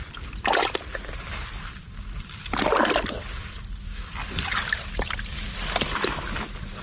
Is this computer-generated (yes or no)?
no